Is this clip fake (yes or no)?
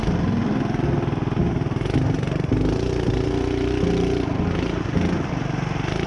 no